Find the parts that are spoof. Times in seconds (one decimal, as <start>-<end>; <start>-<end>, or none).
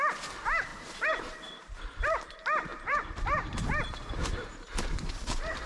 0.7-1.8; 2.7-5.7